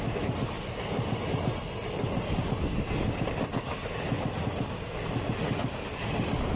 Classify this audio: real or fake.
real